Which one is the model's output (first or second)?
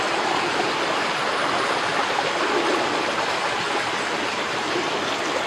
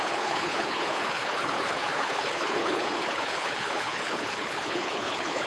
second